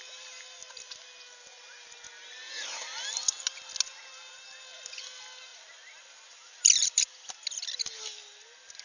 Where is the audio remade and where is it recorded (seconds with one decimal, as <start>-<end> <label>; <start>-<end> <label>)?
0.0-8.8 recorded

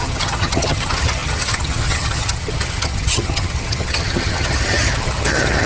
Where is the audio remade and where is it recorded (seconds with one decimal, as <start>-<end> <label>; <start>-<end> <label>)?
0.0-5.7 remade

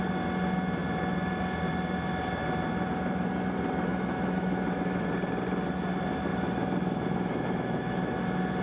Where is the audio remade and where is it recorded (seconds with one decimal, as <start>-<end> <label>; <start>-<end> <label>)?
0.0-3.9 recorded; 3.9-5.1 remade; 5.1-6.3 recorded; 6.3-8.1 remade; 8.1-8.6 recorded